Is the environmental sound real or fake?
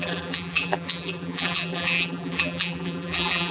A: fake